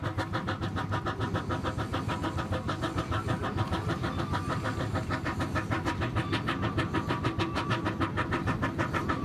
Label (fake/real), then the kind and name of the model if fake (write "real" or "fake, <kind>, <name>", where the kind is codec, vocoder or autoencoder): real